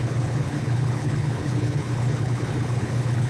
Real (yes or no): no